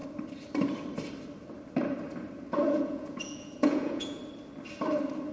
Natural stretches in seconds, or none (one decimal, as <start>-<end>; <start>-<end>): 0.0-2.6; 4.2-5.3